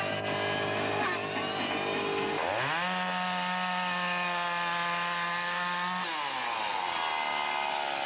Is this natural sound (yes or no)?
yes